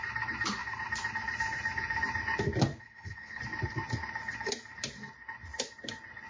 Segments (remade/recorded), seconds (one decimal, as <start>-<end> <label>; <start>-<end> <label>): 0.0-2.7 recorded; 2.7-3.4 remade; 3.4-6.3 recorded